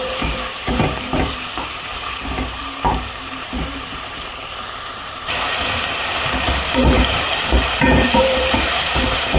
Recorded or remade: remade